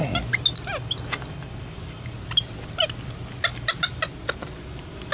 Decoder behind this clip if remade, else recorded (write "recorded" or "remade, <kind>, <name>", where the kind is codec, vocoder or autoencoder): recorded